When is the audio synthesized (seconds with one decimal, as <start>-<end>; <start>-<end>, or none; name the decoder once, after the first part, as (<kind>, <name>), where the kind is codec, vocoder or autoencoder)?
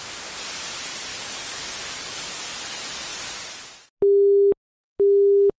1.1-2.3 (codec, DAC)